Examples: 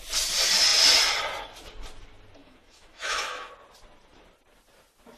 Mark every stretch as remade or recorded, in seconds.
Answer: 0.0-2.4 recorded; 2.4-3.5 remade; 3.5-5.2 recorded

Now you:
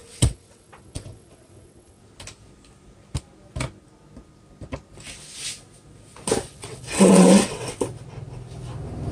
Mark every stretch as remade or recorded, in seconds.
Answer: 0.0-2.0 remade; 2.0-6.5 recorded; 6.5-7.7 remade; 7.7-9.1 recorded

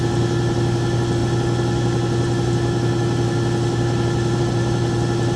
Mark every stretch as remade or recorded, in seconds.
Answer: 0.0-5.4 recorded

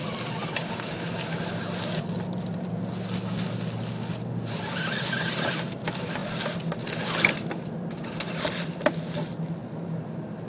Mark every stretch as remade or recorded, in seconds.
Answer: 0.0-10.5 recorded

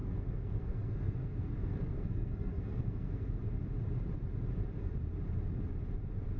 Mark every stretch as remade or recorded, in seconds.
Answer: 0.0-3.4 remade; 3.4-6.4 recorded